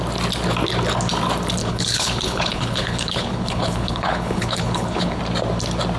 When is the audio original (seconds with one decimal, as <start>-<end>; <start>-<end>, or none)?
0.0-1.6; 5.2-6.0